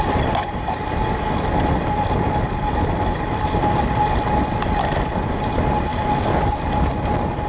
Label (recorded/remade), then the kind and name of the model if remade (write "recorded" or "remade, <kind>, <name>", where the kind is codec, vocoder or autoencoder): recorded